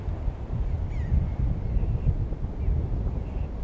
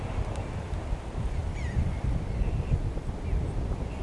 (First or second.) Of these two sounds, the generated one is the second